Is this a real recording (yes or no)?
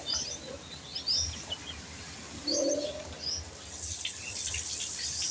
yes